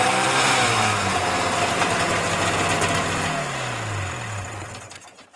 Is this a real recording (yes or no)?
yes